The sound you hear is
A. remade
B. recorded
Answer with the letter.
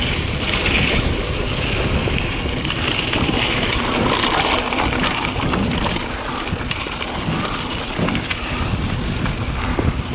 B